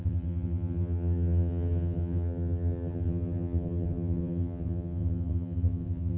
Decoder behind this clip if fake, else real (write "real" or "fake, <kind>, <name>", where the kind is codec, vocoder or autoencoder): fake, vocoder, HiFi-GAN